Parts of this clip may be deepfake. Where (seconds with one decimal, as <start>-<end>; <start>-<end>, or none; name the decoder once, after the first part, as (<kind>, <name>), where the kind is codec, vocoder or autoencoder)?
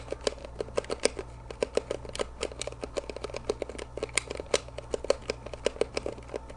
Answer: none